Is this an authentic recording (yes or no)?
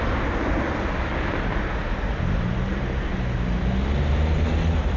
yes